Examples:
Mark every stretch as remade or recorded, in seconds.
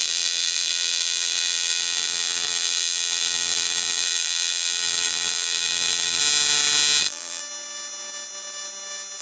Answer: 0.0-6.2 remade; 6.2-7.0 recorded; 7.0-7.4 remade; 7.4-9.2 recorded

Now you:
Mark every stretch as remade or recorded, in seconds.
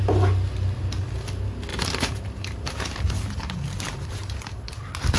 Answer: 0.0-1.7 recorded; 1.7-4.8 remade; 4.8-5.2 recorded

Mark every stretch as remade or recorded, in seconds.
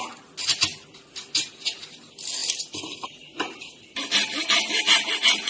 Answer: 0.0-2.4 recorded; 2.4-4.4 remade; 4.4-5.5 recorded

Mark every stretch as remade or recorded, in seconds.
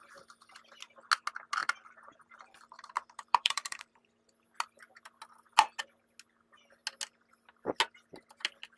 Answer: 0.0-1.6 recorded; 1.6-4.1 remade; 4.1-8.8 recorded